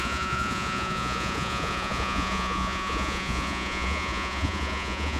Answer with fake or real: fake